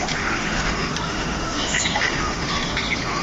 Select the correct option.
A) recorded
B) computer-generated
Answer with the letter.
B